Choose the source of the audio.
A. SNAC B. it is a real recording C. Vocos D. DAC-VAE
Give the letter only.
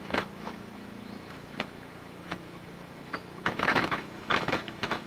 D